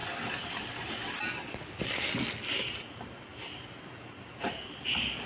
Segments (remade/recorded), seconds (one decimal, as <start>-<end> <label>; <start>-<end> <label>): 0.0-0.9 remade; 0.9-3.3 recorded; 3.3-4.7 remade; 4.7-5.3 recorded

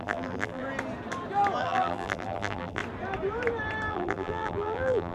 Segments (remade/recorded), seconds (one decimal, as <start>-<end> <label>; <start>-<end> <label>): 0.0-0.6 remade; 0.6-1.6 recorded; 1.6-2.8 remade; 2.8-3.9 recorded; 3.9-5.1 remade

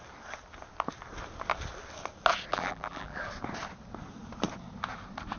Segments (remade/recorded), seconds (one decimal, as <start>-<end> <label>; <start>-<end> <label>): 0.0-2.5 recorded; 2.5-3.2 remade; 3.2-5.4 recorded

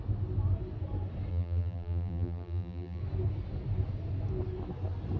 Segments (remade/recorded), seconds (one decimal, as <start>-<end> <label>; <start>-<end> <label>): 0.0-1.3 recorded; 1.3-3.0 remade; 3.0-5.2 recorded

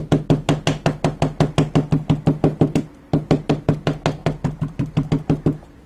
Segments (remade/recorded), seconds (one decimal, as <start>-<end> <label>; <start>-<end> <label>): 0.0-4.2 recorded; 4.2-5.1 remade; 5.1-5.9 recorded

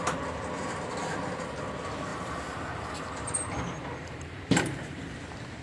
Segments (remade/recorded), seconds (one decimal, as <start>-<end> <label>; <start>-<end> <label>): 0.0-2.1 recorded; 2.1-5.6 remade

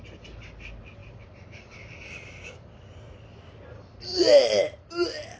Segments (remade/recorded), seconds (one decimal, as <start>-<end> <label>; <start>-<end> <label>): 0.0-1.0 recorded; 1.0-3.2 remade; 3.2-4.1 recorded; 4.1-4.9 remade; 4.9-5.4 recorded